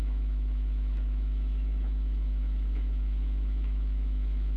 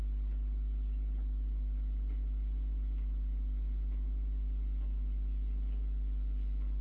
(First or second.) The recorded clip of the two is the second